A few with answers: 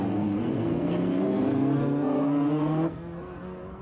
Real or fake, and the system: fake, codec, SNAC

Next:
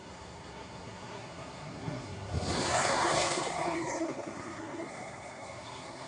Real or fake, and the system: fake, codec, SNAC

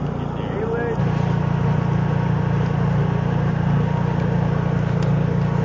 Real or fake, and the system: real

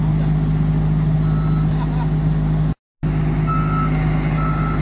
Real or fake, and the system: real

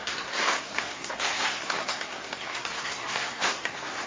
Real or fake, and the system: fake, codec, SNAC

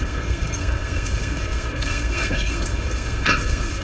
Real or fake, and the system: fake, codec, SNAC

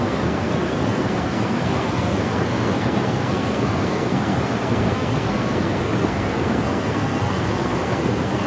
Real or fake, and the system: fake, codec, SNAC